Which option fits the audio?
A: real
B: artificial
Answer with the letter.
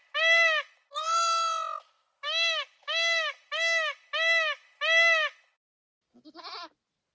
A